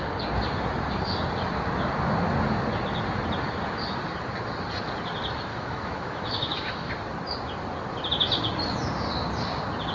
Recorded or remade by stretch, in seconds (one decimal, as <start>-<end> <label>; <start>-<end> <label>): 0.0-5.5 recorded; 5.5-6.9 remade; 6.9-9.9 recorded